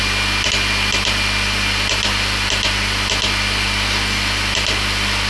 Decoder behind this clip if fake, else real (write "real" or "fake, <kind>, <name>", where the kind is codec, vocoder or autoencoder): real